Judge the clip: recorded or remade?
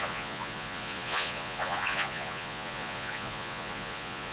remade